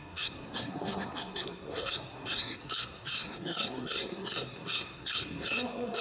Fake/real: fake